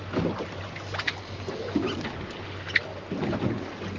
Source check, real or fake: real